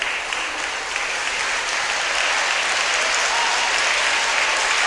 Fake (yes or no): no